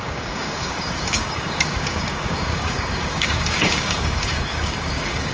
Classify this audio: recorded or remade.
remade